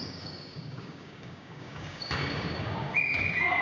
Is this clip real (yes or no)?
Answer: no